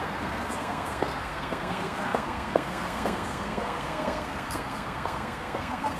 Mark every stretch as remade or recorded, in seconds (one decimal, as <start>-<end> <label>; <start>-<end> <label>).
0.0-6.0 remade